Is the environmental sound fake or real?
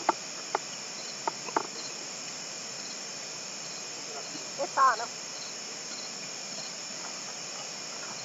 real